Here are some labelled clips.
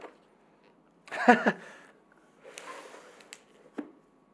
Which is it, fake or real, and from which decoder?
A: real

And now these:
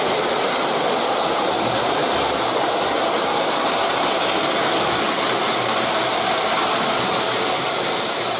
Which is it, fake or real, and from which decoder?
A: real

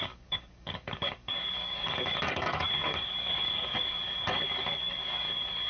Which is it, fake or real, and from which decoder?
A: fake, codec, DAC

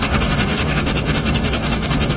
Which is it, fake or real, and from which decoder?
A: fake, codec, DAC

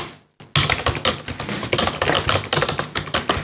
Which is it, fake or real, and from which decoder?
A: real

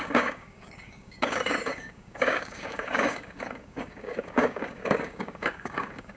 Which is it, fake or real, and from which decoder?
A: fake, codec, DAC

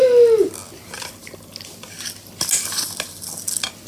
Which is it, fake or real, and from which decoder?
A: real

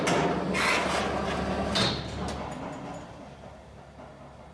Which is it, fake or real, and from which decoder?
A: real